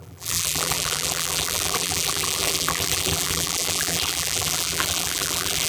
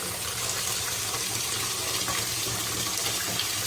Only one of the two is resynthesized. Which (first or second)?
first